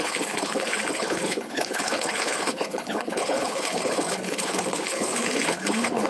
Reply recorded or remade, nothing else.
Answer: remade